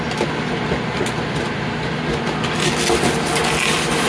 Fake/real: real